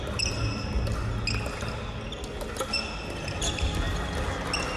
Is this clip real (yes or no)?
yes